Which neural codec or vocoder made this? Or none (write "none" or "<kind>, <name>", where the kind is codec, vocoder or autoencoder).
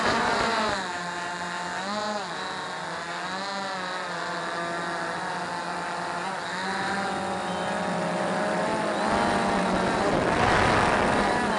none